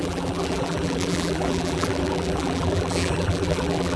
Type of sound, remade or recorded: remade